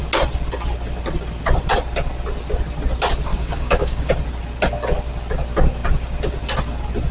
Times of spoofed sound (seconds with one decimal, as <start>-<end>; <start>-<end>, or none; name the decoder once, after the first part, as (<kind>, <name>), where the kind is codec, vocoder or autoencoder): 3.3-4.1 (codec, DAC)